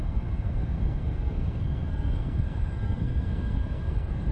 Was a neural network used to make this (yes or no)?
yes